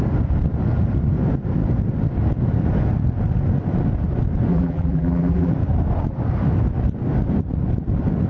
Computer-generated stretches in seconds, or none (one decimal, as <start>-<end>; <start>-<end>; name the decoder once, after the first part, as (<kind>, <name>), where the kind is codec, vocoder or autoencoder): 4.5-5.5 (vocoder, BigVGAN v2)